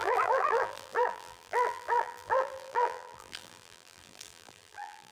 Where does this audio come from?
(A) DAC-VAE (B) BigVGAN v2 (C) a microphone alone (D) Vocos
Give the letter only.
B